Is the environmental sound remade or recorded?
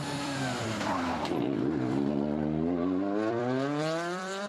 remade